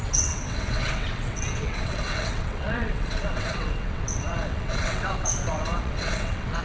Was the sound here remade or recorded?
remade